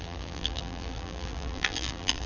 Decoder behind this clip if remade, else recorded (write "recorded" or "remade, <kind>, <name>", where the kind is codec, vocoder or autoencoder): remade, vocoder, BigVGAN v2